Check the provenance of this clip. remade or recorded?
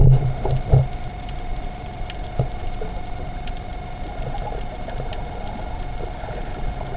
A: recorded